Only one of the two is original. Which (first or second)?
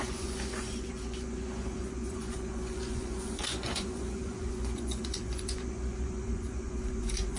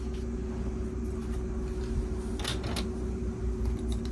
second